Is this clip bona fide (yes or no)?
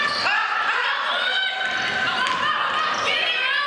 yes